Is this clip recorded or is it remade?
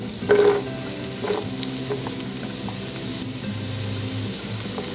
recorded